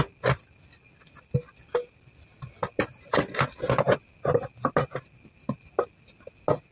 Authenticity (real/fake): real